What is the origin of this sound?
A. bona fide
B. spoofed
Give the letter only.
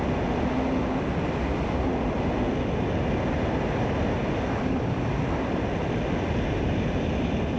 A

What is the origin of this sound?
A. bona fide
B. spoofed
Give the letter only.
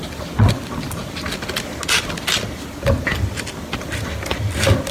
A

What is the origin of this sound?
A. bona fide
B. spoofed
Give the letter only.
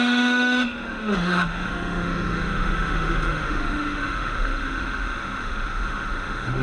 B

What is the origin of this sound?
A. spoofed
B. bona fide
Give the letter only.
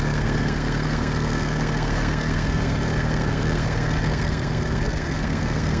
A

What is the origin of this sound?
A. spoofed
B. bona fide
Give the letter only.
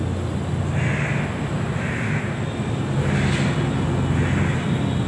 B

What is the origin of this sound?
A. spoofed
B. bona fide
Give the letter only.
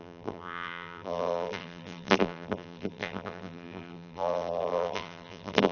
A